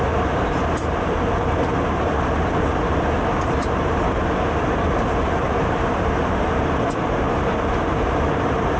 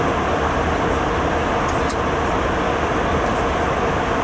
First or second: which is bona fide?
second